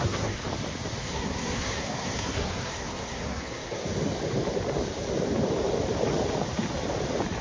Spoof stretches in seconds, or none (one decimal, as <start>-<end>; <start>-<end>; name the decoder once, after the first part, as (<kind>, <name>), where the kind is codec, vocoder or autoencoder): 0.0-0.4 (codec, SNAC); 1.0-3.8